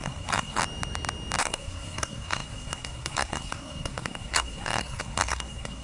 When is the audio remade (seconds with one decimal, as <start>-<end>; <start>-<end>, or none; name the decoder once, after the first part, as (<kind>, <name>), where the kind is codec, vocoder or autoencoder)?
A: 0.0-0.6 (codec, SNAC); 1.4-5.8